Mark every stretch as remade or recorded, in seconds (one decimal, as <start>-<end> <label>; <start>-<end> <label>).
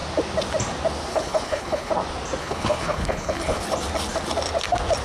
0.0-1.1 recorded; 1.1-1.9 remade; 1.9-2.4 recorded; 2.4-3.6 remade; 3.6-5.0 recorded